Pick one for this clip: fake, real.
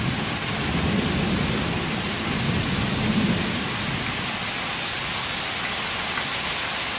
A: real